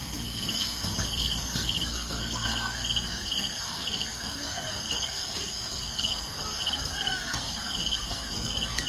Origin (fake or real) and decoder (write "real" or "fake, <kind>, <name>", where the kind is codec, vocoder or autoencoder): fake, codec, SNAC